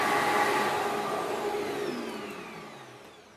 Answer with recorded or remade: recorded